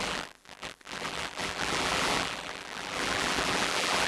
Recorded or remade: remade